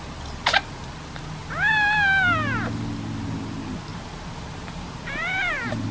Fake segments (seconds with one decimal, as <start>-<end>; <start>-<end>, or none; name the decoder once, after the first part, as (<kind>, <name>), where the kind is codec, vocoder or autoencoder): 3.9-5.5 (vocoder, BigVGAN v2)